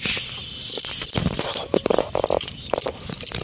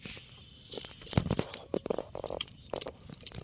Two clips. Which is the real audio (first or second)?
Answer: first